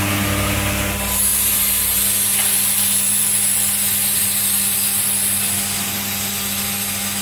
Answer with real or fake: real